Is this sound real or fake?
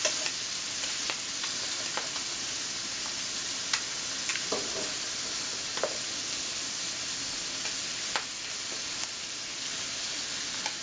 real